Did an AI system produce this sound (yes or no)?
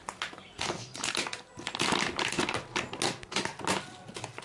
no